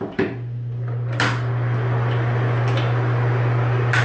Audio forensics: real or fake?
real